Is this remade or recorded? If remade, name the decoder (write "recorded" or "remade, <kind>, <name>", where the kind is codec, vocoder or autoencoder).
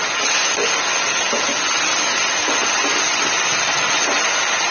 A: recorded